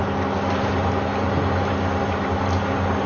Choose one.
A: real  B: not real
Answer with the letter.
A